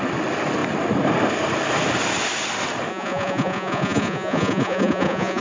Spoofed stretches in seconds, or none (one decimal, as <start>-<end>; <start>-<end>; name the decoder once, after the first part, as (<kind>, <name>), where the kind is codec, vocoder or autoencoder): 2.9-5.4 (vocoder, Vocos)

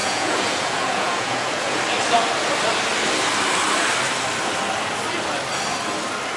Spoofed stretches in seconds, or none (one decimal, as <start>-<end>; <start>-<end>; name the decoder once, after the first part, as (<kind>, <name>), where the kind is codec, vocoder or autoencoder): 0.0-1.8 (vocoder, Vocos)

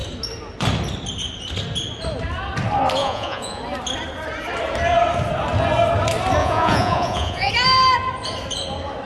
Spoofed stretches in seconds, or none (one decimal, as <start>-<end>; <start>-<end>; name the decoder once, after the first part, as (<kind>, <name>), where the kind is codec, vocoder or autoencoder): 3.0-3.6 (vocoder, Vocos); 6.4-7.5

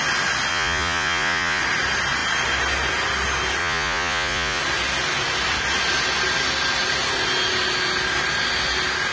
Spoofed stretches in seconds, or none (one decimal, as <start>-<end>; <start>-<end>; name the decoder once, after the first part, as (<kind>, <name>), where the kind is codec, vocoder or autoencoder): 0.5-1.6 (vocoder, Vocos); 3.6-4.6